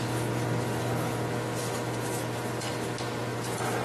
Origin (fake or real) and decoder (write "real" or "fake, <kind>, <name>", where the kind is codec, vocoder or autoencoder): real